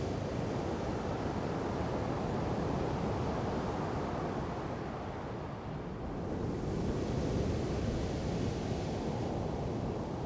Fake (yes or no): no